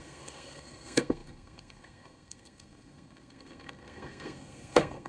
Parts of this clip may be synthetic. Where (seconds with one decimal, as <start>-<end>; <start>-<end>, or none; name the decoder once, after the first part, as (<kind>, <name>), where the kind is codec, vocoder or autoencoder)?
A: 0.0-5.1 (codec, SNAC)